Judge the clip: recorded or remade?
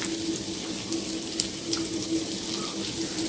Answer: recorded